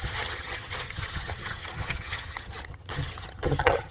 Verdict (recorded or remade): remade